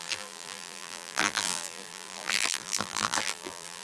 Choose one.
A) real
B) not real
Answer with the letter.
B